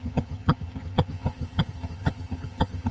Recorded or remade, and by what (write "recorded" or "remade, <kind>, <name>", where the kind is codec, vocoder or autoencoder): remade, vocoder, HiFi-GAN